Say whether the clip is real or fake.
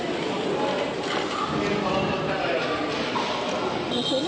real